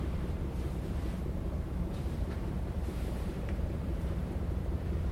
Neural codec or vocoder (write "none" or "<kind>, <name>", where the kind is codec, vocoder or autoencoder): vocoder, BigVGAN v2